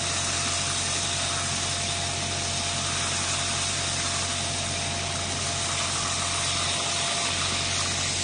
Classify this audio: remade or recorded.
recorded